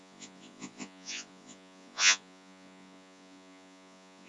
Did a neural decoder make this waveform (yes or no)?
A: yes